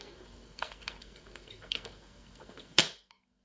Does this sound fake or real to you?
fake